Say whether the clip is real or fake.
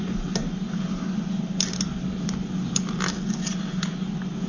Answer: real